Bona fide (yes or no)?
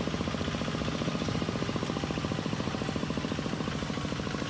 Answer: yes